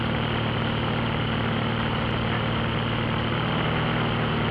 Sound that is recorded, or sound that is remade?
recorded